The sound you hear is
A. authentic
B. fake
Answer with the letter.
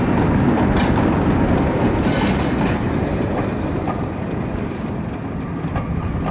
A